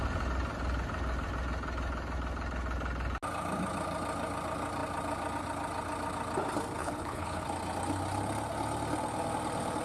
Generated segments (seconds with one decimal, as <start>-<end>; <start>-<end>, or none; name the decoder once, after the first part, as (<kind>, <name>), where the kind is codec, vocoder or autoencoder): 6.8-7.4 (codec, HILCodec)